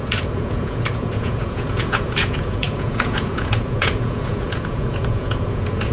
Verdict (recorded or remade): remade